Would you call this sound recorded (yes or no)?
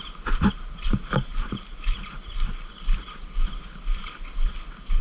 yes